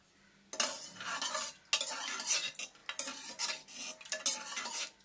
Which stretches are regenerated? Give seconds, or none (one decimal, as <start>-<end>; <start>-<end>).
none